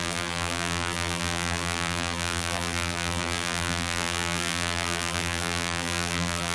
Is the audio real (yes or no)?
no